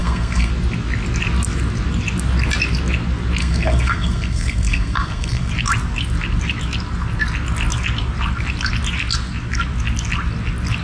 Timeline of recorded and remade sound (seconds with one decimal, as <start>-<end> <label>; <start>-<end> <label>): 0.0-0.5 remade; 0.5-3.4 recorded; 3.4-5.5 remade; 5.5-10.8 recorded

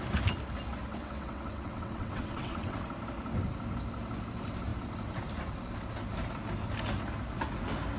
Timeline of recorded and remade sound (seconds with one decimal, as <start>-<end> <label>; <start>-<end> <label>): 0.0-0.9 recorded; 0.9-2.8 remade; 2.8-8.0 recorded

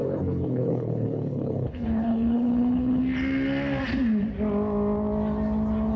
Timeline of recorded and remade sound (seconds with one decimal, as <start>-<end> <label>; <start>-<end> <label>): 0.0-3.0 remade; 3.0-6.0 recorded

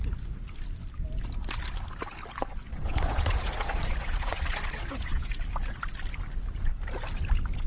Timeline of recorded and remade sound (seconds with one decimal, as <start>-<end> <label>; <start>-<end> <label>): 0.0-2.5 recorded; 2.5-5.3 remade; 5.3-7.7 recorded